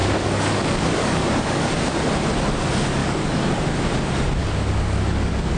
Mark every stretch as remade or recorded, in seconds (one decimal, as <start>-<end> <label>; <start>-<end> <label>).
0.0-1.7 remade; 1.7-3.0 recorded; 3.0-3.8 remade; 3.8-4.4 recorded; 4.4-5.6 remade